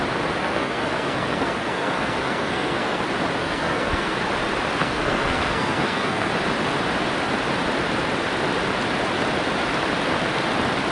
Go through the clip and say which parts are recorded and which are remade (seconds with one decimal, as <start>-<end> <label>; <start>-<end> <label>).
0.0-0.4 recorded; 0.4-3.0 remade; 3.0-3.4 recorded; 3.4-4.2 remade; 4.2-4.8 recorded; 4.8-6.3 remade; 6.3-10.9 recorded